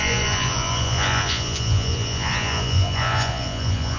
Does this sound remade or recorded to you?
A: remade